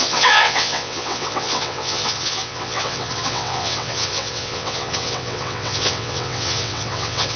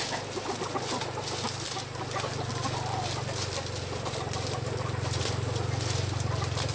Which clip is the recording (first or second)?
second